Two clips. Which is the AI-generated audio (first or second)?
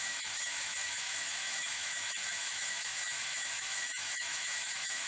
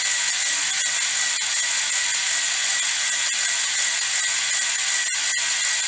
first